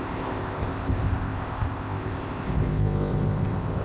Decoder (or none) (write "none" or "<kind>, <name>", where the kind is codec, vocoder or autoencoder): codec, ZipCodec